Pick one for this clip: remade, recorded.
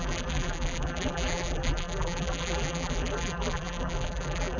remade